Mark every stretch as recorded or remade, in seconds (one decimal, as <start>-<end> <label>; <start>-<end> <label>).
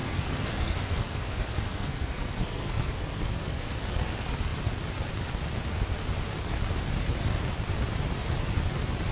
0.0-4.1 remade; 4.1-9.1 recorded